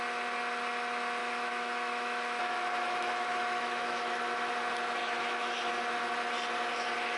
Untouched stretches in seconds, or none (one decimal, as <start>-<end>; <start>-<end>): 0.0-1.2; 4.5-5.0; 5.7-7.2